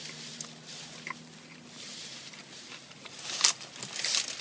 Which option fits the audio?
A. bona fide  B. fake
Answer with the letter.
A